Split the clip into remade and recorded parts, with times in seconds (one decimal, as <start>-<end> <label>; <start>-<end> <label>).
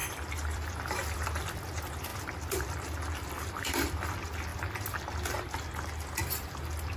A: 0.0-1.7 remade; 1.7-2.1 recorded; 2.1-4.1 remade; 4.1-7.0 recorded